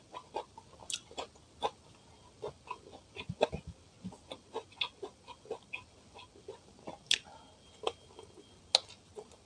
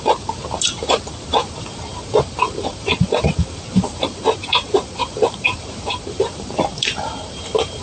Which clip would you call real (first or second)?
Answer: first